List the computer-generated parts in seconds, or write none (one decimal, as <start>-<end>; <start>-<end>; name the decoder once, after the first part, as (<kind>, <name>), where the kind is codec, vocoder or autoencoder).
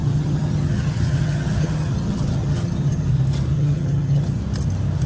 0.0-3.1 (vocoder, HiFi-GAN); 3.5-4.4